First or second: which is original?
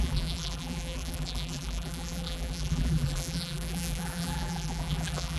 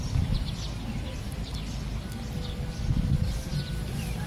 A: second